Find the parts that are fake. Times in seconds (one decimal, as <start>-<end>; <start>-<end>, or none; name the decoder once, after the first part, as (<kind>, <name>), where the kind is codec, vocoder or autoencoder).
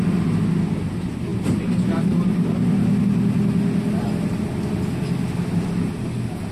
none